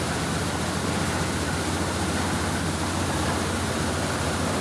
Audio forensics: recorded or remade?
recorded